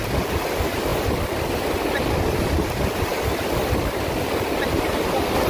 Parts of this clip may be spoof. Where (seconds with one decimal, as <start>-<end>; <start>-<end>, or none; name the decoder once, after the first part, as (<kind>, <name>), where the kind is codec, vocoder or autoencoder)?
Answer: none